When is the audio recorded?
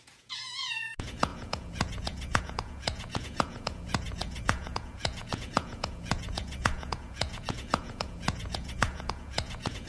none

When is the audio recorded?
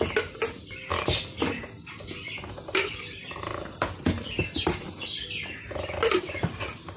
0.0-7.0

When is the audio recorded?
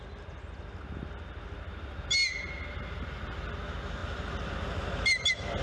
0.0-5.6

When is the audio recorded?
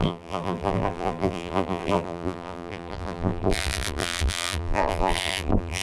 none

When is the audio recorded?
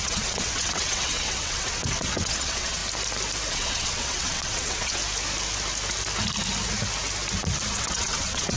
2.8-3.5; 5.0-7.7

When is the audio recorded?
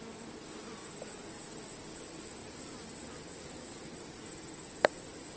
0.0-5.4